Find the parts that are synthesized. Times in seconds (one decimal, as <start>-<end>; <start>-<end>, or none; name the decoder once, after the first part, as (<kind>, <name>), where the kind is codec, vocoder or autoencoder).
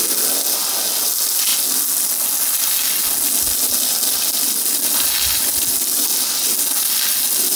none